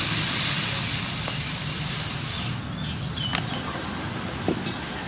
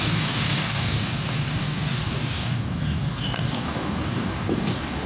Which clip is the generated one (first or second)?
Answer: second